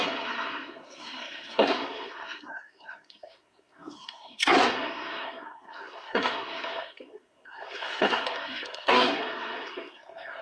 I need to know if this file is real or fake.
fake